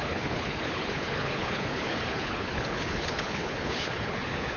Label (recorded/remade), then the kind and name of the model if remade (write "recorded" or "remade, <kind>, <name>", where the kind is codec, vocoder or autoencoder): remade, codec, HILCodec